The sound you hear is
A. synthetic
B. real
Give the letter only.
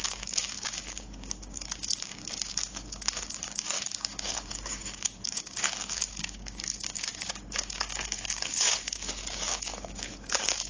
A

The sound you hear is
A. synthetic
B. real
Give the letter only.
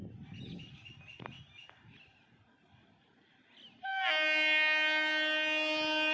B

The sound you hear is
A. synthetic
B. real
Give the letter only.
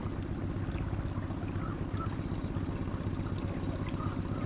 B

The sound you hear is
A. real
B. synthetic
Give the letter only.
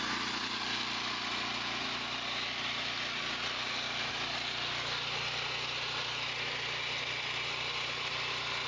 A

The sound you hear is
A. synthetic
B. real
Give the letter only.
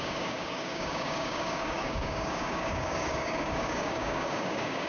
A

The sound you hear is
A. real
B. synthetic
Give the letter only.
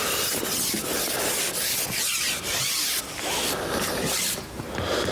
A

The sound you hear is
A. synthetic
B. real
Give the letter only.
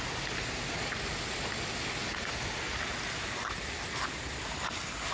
B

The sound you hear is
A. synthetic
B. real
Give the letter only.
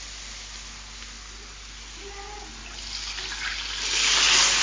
B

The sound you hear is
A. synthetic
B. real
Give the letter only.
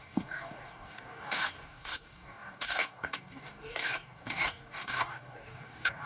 A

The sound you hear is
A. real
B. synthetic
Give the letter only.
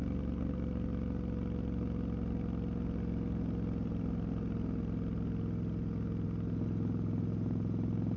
A